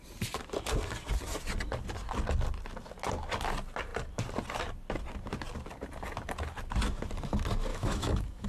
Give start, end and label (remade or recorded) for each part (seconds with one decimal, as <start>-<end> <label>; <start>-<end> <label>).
0.0-7.7 recorded; 7.7-8.5 remade